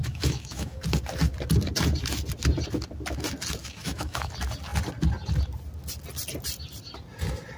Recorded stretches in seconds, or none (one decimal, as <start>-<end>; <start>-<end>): 0.8-3.6; 4.3-7.6